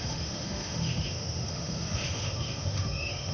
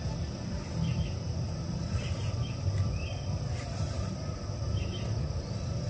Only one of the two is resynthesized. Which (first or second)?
first